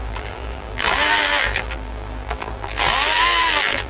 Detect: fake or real fake